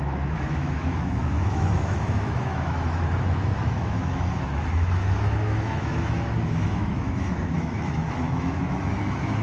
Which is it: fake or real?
fake